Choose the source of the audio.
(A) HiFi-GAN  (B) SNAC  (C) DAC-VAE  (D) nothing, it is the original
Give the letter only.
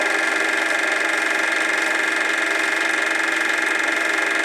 D